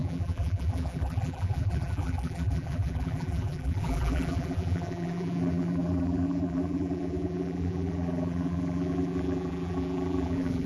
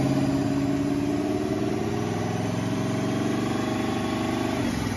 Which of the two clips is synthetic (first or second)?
first